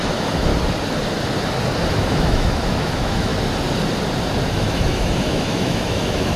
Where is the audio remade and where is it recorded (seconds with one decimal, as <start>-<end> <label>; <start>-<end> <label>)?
0.0-0.5 remade; 0.5-1.9 recorded; 1.9-3.3 remade; 3.3-4.5 recorded; 4.5-6.4 remade

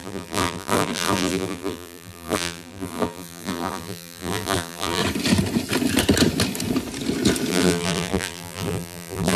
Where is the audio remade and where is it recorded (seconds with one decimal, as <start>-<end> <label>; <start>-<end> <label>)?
0.0-5.0 remade; 5.0-7.5 recorded; 7.5-9.4 remade

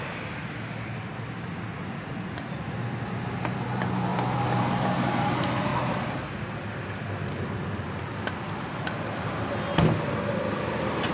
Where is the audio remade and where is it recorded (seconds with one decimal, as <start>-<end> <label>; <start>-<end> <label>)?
0.0-1.7 recorded; 1.7-2.7 remade; 2.7-11.1 recorded

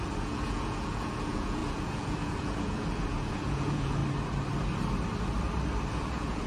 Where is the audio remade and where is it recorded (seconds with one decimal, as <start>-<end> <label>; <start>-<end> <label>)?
0.0-4.0 remade; 4.0-5.9 recorded; 5.9-6.5 remade